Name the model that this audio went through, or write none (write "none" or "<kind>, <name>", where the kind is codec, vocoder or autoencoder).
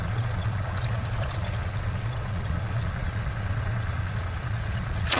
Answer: vocoder, Vocos